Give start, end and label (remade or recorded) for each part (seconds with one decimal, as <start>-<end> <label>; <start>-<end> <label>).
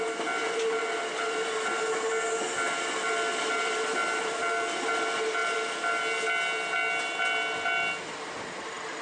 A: 0.0-9.0 recorded